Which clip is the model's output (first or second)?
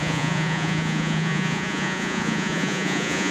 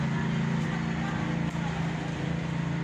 first